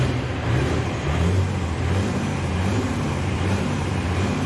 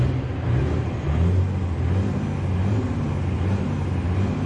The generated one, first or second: first